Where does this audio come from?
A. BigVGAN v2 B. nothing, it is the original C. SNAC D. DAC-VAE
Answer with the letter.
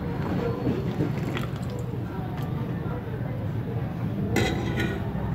B